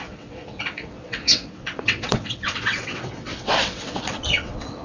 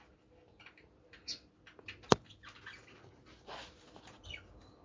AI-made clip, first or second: first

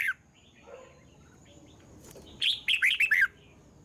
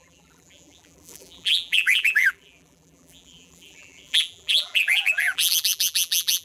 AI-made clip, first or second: second